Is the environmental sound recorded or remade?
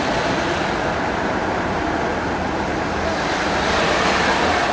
recorded